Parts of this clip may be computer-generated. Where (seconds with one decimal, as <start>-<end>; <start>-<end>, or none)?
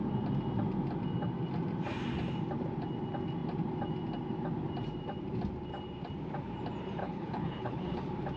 7.0-8.0